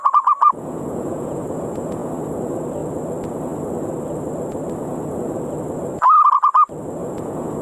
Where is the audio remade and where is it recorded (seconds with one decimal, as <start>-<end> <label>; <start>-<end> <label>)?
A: 0.0-2.1 remade; 2.1-7.0 recorded; 7.0-7.6 remade